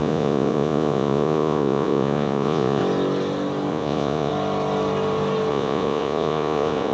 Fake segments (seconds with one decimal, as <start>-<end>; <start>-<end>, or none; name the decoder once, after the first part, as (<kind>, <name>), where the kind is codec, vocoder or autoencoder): 0.0-2.8 (vocoder, Vocos); 3.7-4.3; 5.5-6.9